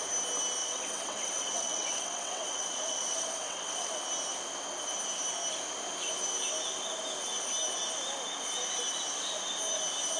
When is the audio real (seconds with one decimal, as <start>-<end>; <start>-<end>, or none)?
0.0-0.6; 4.0-10.2